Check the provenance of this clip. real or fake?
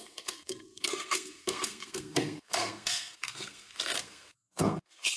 fake